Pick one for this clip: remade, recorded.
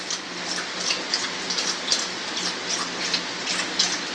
recorded